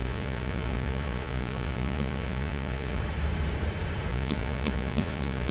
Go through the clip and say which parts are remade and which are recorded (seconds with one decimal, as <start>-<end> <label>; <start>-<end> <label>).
0.0-3.0 remade; 3.0-4.1 recorded; 4.1-5.5 remade